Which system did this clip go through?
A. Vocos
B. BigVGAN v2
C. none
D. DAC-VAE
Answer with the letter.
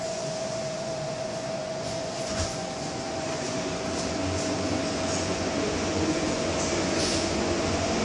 A